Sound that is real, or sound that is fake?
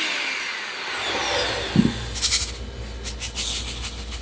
real